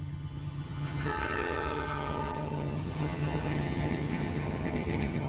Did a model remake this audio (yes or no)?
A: yes